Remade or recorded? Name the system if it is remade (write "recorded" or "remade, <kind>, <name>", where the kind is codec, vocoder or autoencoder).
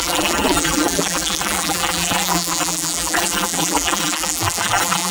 remade, vocoder, BigVGAN v2